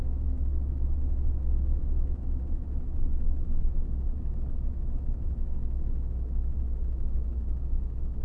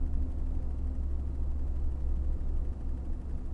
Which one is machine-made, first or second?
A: first